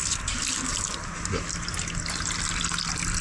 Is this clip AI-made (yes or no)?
no